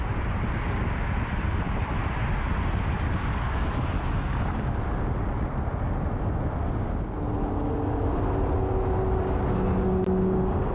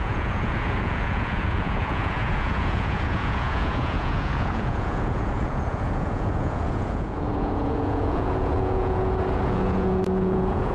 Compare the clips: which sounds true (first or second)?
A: first